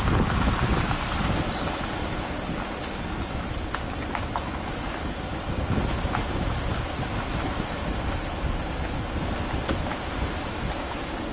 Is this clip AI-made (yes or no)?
no